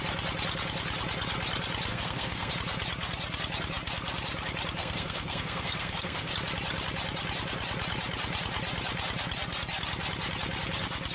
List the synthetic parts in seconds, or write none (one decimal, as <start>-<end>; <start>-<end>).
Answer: 1.9-2.5; 4.8-6.3